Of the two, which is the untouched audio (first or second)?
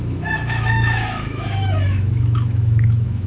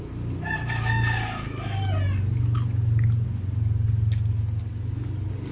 second